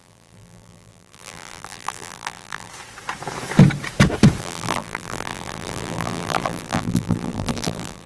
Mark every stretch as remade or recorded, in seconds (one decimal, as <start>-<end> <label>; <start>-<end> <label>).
0.0-2.7 remade; 2.7-4.4 recorded; 4.4-8.1 remade